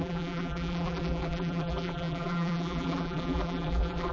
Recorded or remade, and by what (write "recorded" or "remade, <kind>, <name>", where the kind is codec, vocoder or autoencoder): remade, vocoder, BigVGAN v2